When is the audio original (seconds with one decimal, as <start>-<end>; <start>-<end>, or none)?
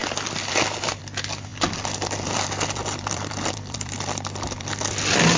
1.0-1.5; 4.7-5.4